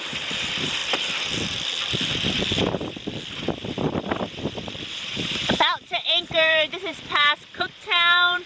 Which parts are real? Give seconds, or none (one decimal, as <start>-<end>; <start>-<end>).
0.8-4.9